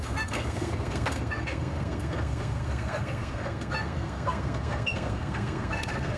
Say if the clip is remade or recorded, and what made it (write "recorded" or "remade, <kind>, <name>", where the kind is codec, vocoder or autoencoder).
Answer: remade, codec, SNAC